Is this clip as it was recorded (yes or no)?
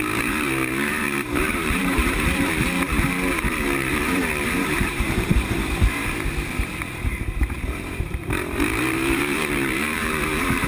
no